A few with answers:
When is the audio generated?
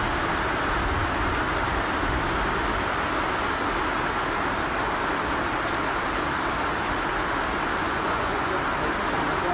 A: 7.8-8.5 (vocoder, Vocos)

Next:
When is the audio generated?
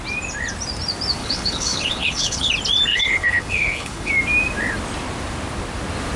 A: 1.2-2.5 (codec, HILCodec); 2.9-4.1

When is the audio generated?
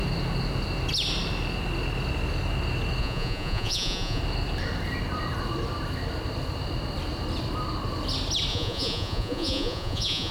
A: 3.0-4.2 (vocoder, Vocos); 8.5-10.3